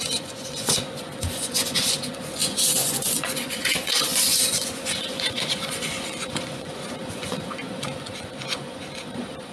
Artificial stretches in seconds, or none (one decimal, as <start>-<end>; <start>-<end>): 0.0-9.5